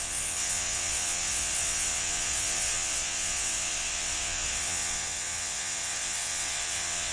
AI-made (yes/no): yes